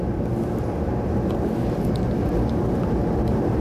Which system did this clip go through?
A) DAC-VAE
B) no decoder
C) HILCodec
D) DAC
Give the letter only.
B